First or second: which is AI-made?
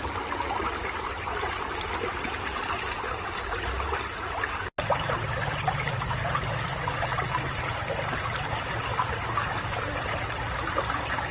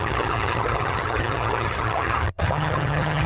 second